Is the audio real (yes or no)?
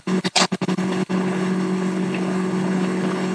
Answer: no